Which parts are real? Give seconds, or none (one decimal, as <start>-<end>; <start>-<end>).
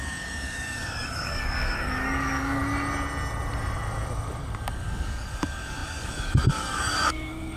2.6-4.7